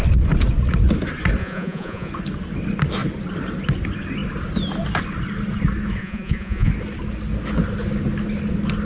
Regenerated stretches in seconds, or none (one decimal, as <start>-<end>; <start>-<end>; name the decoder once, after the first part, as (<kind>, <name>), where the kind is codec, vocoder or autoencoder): 1.4-2.1 (vocoder, Vocos); 6.0-6.7